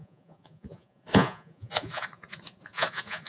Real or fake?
fake